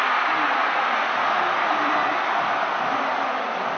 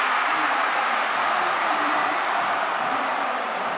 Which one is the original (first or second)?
first